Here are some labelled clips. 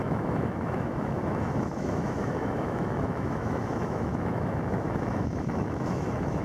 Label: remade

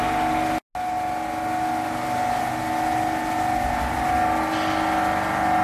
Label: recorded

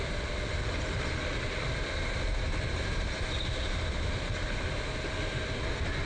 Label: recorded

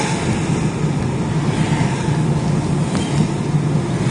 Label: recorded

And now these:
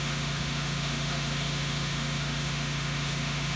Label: remade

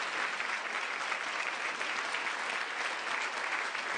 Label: recorded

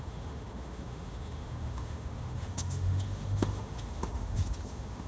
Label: remade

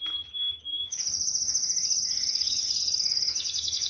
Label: remade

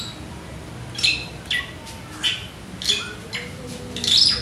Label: recorded